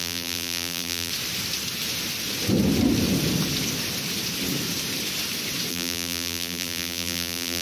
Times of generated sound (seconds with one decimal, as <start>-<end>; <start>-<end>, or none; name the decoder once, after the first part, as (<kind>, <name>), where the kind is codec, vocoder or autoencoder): 0.0-1.1 (vocoder, BigVGAN v2); 5.7-7.6

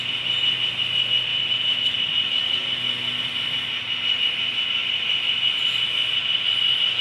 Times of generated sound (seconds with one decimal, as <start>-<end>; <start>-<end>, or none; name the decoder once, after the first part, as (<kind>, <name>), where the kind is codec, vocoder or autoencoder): 1.3-2.0 (autoencoder, DAC-VAE)

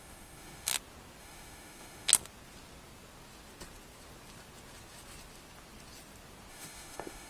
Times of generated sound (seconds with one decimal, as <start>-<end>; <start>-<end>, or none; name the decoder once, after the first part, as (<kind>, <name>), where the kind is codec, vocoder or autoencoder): 0.0-0.7 (autoencoder, DAC-VAE); 1.2-2.1; 6.5-7.3

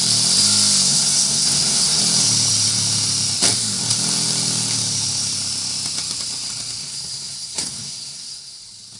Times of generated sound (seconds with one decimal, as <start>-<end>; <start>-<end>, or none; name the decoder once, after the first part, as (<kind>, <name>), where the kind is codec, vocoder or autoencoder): 0.9-2.0 (codec, SNAC); 6.8-8.6

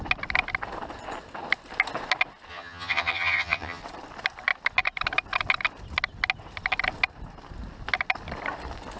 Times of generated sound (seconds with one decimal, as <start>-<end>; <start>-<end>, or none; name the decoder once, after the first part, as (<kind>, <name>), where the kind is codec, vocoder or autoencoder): 2.5-3.8 (vocoder, HiFi-GAN)

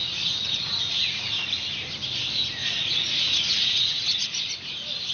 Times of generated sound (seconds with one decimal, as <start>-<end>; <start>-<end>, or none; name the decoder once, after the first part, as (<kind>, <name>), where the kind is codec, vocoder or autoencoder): 0.0-1.3 (vocoder, Vocos); 2.6-4.5